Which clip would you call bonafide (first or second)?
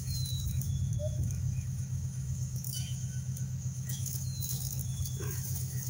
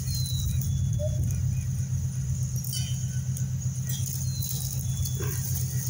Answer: second